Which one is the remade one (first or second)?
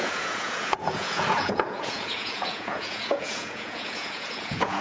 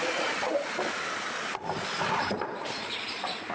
first